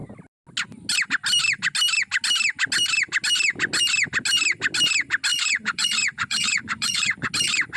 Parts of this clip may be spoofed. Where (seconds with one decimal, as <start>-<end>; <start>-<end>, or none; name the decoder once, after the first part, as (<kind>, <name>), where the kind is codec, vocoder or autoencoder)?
5.3-7.3 (vocoder, Vocos)